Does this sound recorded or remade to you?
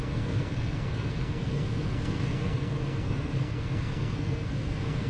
remade